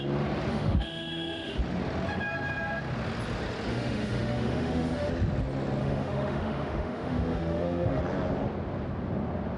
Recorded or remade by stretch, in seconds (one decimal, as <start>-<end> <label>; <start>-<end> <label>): 0.0-0.5 recorded; 0.5-1.6 remade; 1.6-3.7 recorded; 3.7-5.1 remade; 5.1-5.8 recorded; 5.8-8.0 remade; 8.0-9.6 recorded